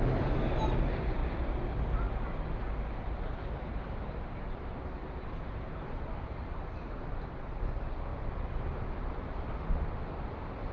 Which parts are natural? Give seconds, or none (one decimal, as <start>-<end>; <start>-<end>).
0.0-10.7